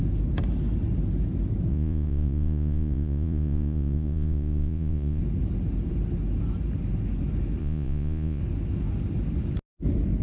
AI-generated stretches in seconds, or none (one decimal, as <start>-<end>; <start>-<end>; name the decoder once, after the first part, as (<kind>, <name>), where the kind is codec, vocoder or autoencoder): 1.7-5.2 (vocoder, Vocos); 7.6-8.4